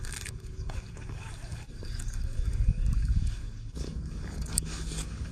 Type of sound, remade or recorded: remade